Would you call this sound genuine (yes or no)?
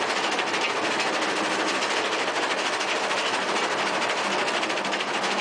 yes